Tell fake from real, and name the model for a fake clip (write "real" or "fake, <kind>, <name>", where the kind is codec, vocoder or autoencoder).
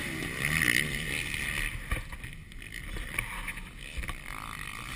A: real